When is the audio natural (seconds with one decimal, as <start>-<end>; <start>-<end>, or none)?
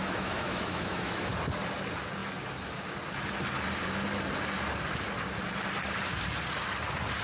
1.3-7.2